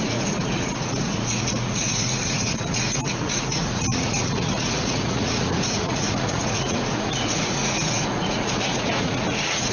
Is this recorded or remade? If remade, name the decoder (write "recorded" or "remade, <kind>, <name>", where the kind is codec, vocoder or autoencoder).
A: remade, vocoder, Vocos